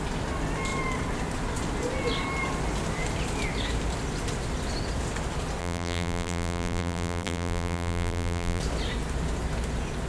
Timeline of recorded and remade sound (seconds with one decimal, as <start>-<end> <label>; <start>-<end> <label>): 0.0-5.6 recorded; 5.6-8.6 remade; 8.6-10.1 recorded